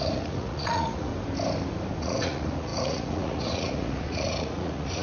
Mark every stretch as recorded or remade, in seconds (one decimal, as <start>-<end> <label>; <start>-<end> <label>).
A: 0.0-1.1 remade; 1.1-2.0 recorded; 2.0-5.0 remade